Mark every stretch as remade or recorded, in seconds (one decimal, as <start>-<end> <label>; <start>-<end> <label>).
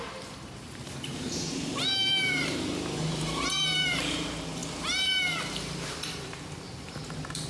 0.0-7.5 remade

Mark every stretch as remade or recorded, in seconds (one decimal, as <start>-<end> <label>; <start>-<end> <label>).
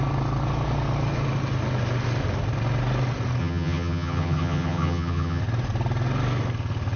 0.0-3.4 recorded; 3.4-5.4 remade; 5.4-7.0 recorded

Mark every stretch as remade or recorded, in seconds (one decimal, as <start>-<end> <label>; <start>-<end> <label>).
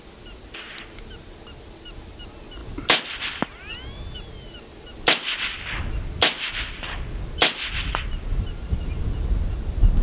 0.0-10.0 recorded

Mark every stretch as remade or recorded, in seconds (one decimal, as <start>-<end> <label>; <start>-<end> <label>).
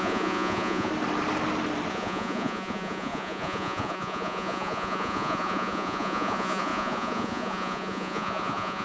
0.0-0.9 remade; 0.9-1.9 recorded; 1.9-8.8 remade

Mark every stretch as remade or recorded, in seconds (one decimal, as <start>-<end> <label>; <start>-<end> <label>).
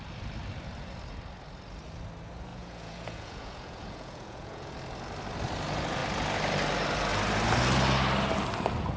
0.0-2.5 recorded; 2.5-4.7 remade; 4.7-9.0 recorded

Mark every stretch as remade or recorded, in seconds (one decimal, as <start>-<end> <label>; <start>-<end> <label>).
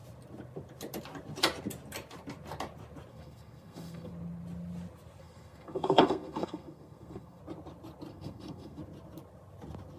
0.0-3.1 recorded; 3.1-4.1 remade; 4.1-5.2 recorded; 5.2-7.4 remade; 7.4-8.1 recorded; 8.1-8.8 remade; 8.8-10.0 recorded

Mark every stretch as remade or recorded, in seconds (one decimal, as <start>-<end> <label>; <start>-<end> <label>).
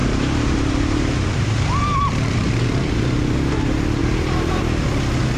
0.0-2.5 remade; 2.5-4.0 recorded; 4.0-4.6 remade; 4.6-5.4 recorded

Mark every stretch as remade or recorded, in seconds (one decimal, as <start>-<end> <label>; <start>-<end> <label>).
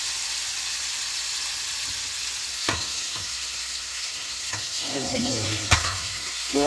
0.0-2.5 recorded; 2.5-6.7 remade